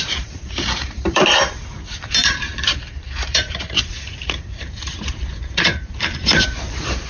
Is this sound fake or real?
fake